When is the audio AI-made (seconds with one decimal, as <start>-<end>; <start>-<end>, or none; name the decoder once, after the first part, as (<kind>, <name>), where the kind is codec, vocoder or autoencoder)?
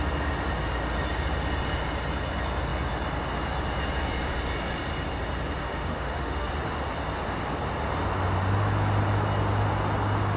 5.6-6.5 (autoencoder, DAC-VAE)